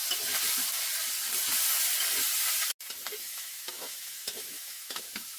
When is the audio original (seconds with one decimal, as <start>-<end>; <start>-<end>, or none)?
0.0-3.2